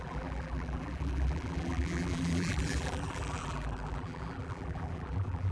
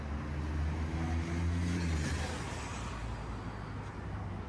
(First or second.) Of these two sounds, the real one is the second